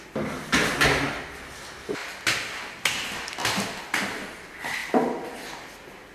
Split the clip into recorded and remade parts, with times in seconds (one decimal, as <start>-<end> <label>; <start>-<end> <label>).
0.0-6.1 recorded